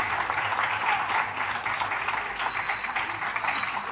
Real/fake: fake